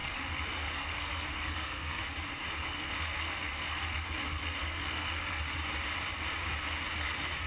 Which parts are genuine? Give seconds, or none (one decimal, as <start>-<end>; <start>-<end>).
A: 2.0-2.5; 5.5-7.0